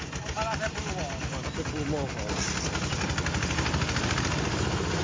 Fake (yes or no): no